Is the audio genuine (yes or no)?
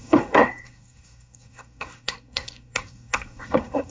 no